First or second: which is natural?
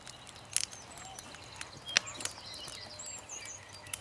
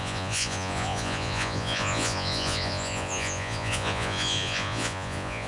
first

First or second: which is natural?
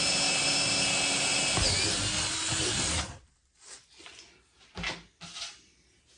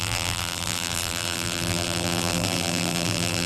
first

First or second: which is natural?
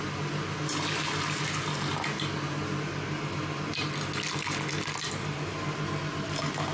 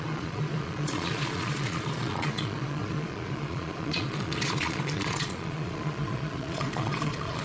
first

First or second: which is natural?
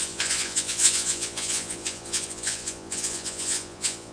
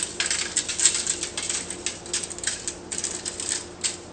second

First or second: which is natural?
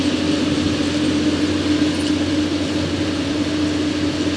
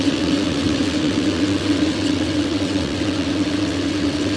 first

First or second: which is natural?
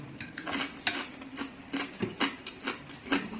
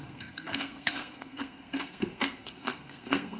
first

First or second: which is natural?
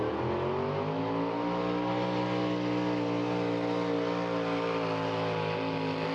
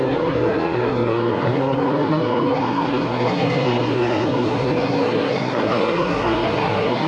first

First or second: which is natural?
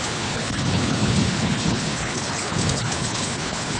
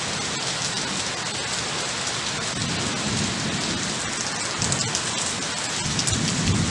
second